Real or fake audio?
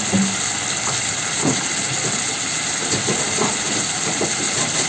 real